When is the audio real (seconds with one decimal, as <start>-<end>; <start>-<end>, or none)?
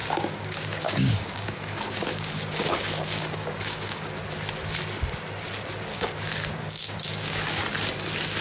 4.1-5.9; 7.6-8.4